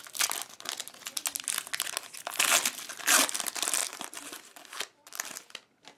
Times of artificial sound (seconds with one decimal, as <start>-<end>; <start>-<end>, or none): none